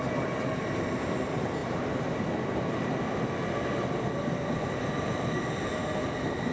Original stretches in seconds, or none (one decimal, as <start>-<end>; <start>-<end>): 0.0-6.5